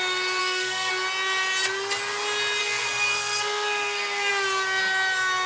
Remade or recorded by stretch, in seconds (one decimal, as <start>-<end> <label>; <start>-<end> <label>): 0.0-0.4 recorded; 0.4-0.9 remade; 0.9-2.6 recorded; 2.6-4.3 remade; 4.3-5.5 recorded